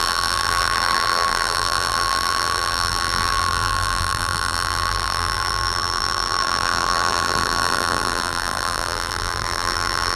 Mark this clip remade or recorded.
remade